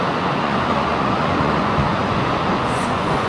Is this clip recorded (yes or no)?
no